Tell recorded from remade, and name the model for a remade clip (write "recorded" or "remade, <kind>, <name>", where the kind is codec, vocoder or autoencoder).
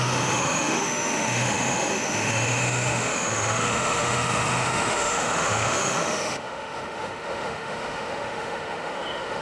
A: remade, autoencoder, DAC-VAE